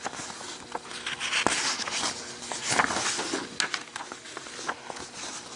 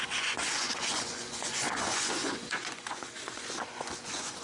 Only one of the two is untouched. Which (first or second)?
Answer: first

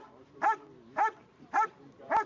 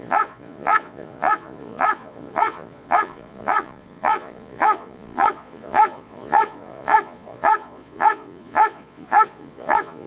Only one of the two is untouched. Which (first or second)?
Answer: first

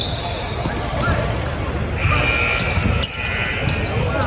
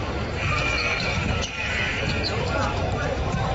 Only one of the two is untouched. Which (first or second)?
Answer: first